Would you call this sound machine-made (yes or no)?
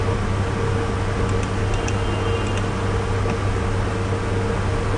no